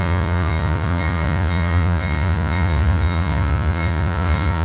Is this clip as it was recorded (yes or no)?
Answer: no